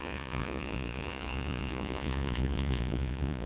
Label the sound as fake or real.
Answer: fake